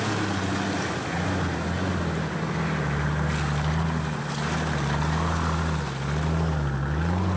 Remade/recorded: recorded